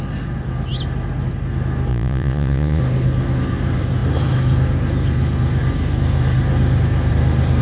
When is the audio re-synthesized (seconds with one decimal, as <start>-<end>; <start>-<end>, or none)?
1.9-2.8